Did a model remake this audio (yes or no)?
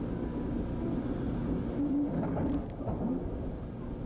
no